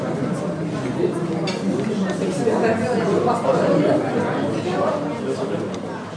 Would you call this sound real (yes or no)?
yes